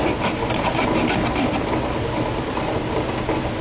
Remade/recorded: recorded